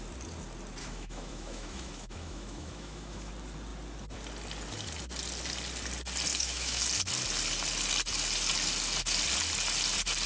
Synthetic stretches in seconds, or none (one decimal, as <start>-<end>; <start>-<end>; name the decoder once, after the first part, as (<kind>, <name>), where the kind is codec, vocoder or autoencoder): 0.8-3.3 (autoencoder, DAC-VAE); 6.3-6.8